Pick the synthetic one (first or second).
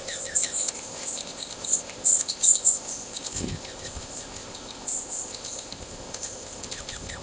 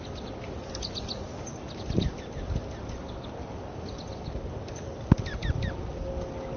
first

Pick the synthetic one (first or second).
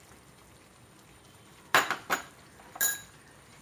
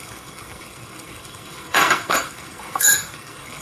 second